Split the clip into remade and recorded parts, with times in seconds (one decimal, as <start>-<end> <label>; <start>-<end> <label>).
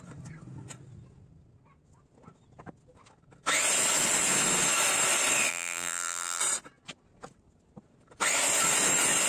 0.0-5.5 recorded; 5.5-6.4 remade; 6.4-9.3 recorded